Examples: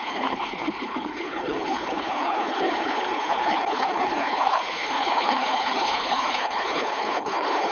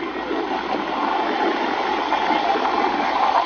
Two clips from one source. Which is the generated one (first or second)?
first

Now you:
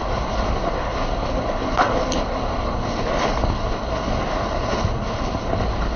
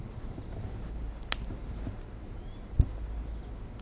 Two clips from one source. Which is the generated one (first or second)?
first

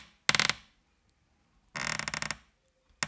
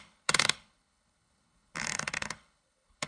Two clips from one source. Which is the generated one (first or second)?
second